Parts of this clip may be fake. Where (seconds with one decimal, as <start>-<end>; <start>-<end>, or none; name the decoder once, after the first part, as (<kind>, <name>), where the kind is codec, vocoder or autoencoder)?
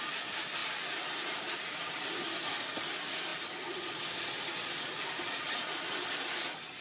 none